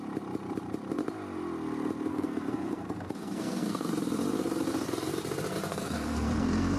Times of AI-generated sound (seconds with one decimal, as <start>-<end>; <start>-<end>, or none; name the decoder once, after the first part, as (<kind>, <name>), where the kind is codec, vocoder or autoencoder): 2.1-3.9 (codec, SNAC); 5.7-6.8